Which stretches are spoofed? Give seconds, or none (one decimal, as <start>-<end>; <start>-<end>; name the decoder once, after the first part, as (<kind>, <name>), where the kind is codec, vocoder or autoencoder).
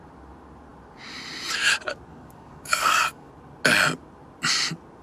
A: 2.1-3.3 (codec, DAC)